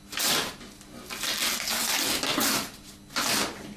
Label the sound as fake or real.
real